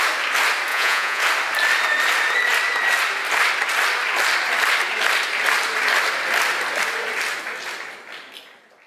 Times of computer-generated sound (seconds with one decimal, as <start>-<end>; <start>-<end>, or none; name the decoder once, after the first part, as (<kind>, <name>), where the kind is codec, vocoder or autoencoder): 0.7-1.2 (vocoder, Vocos)